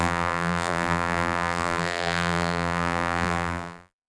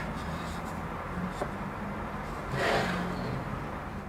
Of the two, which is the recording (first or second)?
second